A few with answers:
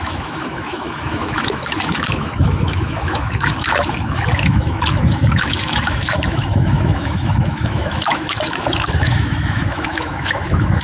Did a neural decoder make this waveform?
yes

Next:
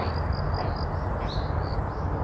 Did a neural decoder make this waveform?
no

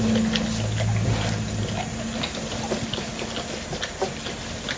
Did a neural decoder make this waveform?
no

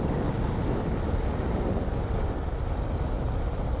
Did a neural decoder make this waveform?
no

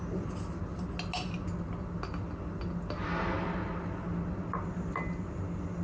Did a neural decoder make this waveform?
no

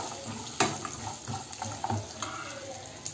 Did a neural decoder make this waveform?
no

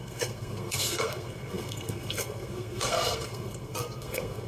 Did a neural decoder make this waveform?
yes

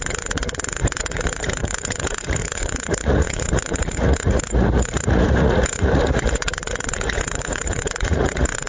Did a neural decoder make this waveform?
yes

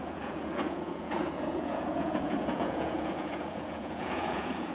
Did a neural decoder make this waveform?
yes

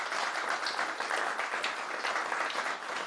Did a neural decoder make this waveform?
no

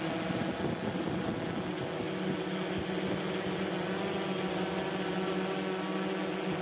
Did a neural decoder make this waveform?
no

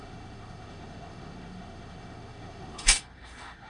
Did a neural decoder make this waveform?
yes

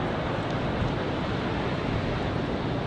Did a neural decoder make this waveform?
no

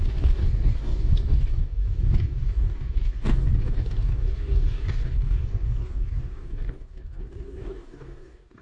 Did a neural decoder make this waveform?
yes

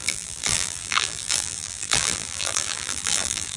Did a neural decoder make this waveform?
yes